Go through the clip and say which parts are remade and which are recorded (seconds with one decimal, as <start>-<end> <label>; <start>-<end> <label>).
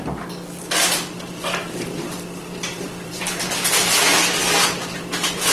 0.0-2.4 recorded; 2.4-4.0 remade; 4.0-4.4 recorded; 4.4-5.0 remade; 5.0-5.5 recorded